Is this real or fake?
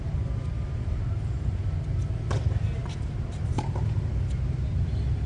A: real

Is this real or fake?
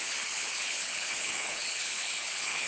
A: fake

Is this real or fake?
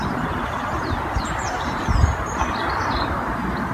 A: fake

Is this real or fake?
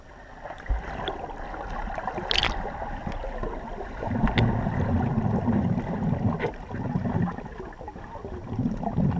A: real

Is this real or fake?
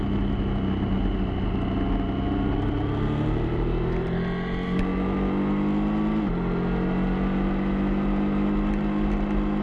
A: real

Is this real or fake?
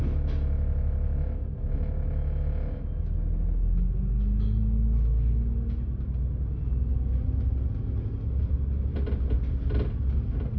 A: real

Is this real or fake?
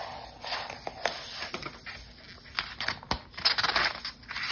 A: real